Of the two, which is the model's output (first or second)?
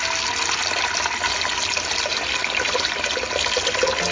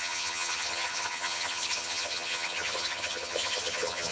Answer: second